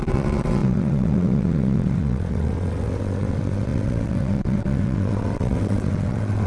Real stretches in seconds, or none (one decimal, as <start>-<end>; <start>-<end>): none